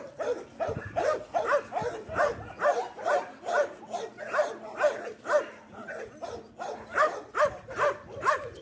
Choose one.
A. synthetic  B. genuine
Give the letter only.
B